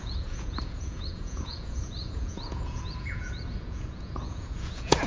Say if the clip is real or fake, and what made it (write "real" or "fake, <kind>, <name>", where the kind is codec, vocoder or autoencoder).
fake, vocoder, Vocos